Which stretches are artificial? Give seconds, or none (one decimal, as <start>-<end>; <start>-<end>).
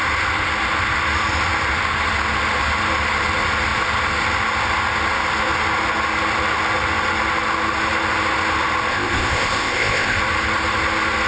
8.9-10.2